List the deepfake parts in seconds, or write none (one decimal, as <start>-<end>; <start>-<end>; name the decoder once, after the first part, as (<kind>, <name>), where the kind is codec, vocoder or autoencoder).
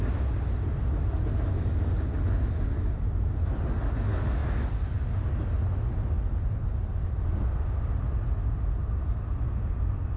none